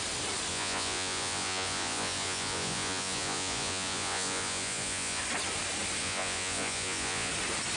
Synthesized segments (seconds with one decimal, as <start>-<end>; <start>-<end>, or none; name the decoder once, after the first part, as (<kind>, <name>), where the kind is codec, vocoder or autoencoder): 0.5-5.2 (vocoder, Vocos); 6.0-7.3